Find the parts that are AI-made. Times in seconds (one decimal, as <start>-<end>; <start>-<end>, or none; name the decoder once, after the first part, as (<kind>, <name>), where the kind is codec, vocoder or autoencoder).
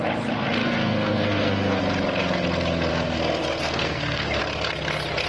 0.6-1.8 (codec, SNAC); 2.9-4.4